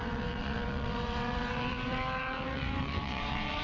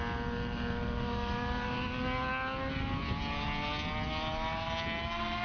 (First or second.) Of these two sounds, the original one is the second